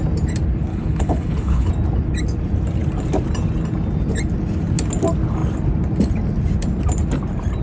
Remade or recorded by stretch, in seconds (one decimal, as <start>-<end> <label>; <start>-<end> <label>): 0.0-0.7 recorded; 0.7-1.7 remade; 1.7-7.6 recorded